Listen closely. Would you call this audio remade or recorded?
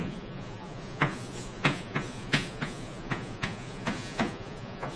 remade